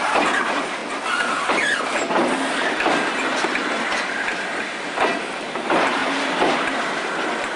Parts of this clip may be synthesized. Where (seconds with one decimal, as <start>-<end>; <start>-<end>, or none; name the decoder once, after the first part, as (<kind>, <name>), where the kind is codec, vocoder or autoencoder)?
0.0-0.8 (vocoder, BigVGAN v2); 5.2-7.6